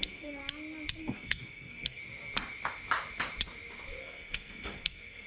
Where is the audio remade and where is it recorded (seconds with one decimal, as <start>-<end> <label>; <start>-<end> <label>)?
0.0-0.4 remade; 0.4-1.0 recorded; 1.0-2.0 remade; 2.0-4.0 recorded; 4.0-5.3 remade